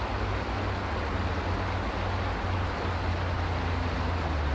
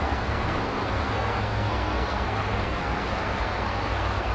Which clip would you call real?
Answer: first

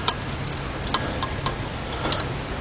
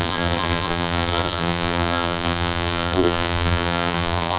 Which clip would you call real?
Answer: first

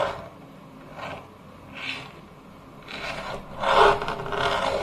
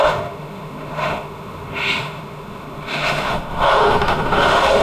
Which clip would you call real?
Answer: first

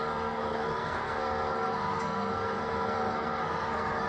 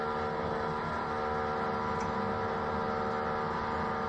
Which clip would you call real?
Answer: second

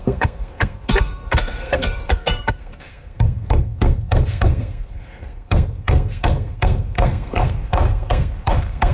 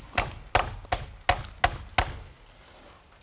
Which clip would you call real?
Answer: second